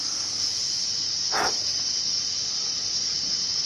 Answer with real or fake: real